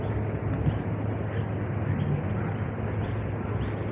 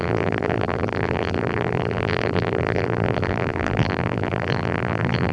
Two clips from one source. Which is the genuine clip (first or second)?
first